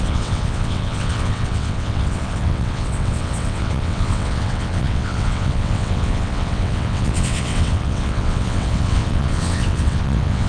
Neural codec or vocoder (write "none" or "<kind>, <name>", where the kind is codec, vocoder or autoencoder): vocoder, WaveNeXt